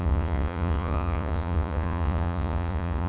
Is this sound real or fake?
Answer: fake